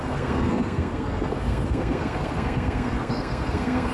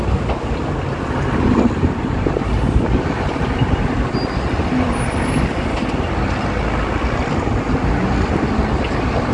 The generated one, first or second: first